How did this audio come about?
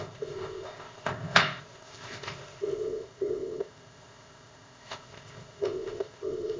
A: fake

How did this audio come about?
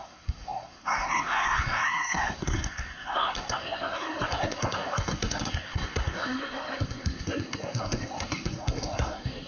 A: fake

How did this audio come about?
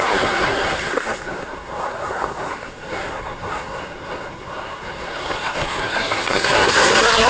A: fake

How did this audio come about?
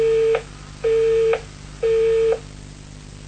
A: real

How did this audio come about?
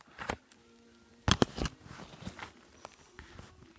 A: real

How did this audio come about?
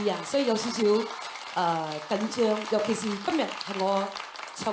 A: real